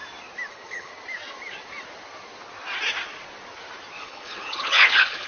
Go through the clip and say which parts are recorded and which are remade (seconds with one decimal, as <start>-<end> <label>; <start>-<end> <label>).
0.0-0.5 recorded; 0.5-0.9 remade; 0.9-4.0 recorded; 4.0-5.3 remade